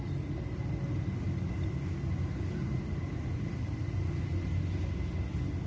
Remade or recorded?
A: recorded